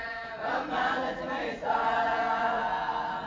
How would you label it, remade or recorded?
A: remade